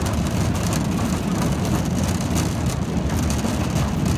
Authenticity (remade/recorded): recorded